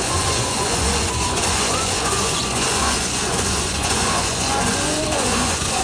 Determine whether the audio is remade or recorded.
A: remade